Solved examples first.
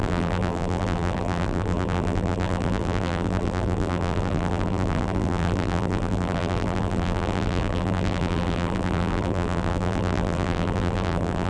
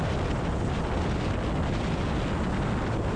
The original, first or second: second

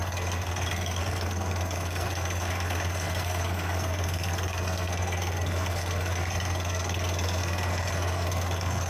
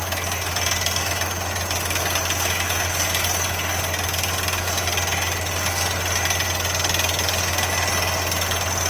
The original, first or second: second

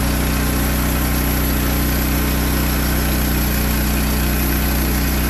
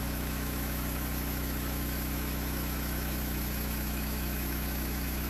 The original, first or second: first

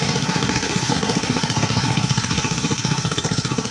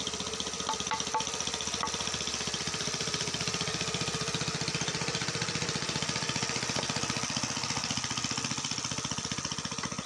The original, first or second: second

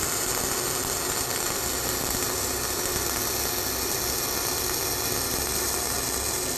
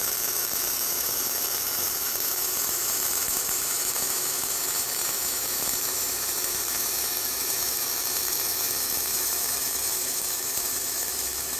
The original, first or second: first